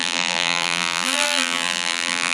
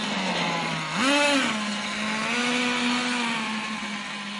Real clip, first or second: second